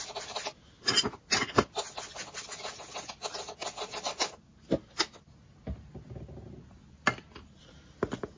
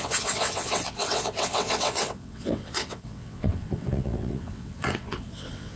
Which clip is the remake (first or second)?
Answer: second